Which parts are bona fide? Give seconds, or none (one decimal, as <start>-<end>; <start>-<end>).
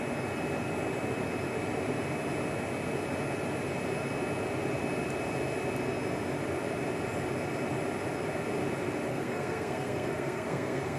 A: 0.0-9.1